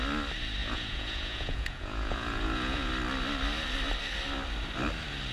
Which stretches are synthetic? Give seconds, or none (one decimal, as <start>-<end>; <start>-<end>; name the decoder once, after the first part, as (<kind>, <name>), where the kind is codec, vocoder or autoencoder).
0.6-2.9 (vocoder, Vocos)